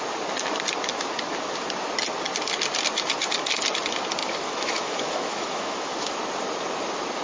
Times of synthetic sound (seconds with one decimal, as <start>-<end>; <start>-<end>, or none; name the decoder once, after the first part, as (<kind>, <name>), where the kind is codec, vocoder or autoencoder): 4.2-6.2 (autoencoder, DAC-VAE)